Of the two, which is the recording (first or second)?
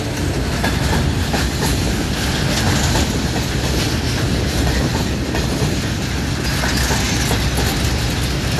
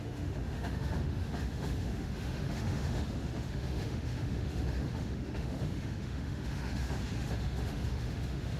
first